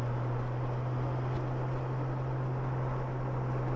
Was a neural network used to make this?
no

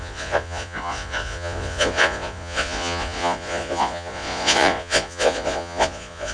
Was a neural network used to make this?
yes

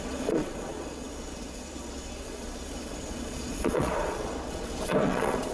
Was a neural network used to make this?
yes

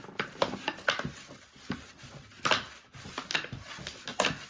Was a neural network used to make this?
no